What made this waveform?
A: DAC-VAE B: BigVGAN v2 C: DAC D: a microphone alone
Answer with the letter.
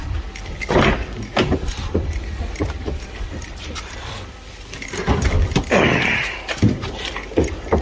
B